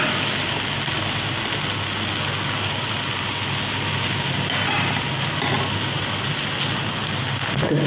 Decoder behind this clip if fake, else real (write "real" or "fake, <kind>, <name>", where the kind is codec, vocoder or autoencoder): real